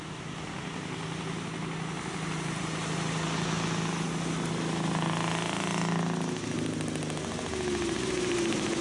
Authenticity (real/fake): real